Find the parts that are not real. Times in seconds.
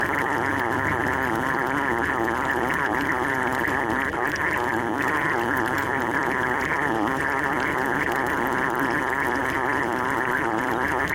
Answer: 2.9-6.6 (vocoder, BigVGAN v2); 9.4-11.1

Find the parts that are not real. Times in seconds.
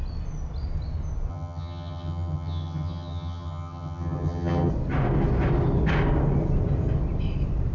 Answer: 1.3-4.7 (vocoder, HiFi-GAN)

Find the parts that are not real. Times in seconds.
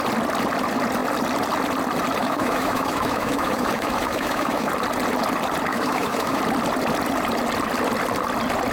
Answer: 2.2-4.7 (autoencoder, DAC-VAE); 5.7-6.4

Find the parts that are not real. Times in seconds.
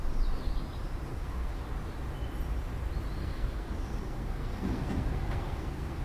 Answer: 1.1-1.6 (codec, SNAC); 3.2-6.0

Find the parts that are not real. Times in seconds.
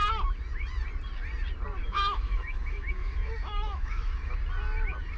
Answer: 1.8-4.3 (autoencoder, DAC-VAE)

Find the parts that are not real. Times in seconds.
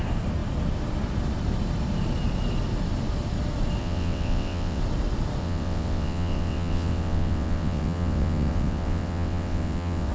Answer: 3.8-4.8 (vocoder, WaveNeXt); 5.4-10.1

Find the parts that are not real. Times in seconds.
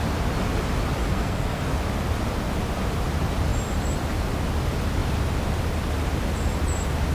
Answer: 1.0-1.6 (codec, SNAC)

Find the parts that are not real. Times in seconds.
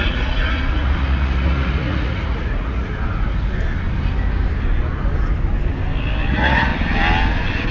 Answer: 0.0-2.9 (vocoder, Vocos); 6.3-6.7